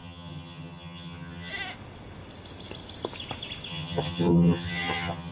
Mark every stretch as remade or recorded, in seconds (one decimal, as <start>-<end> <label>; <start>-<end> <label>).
0.0-1.5 remade; 1.5-3.7 recorded; 3.7-5.3 remade